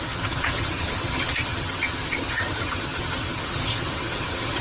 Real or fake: fake